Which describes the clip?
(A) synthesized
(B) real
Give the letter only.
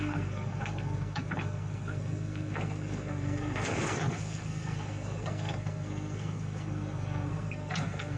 A